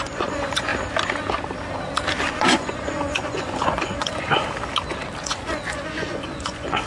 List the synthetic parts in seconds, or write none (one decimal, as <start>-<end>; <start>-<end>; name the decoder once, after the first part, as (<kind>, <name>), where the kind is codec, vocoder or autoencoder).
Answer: 0.0-0.7 (vocoder, Vocos); 2.3-4.4; 5.2-6.9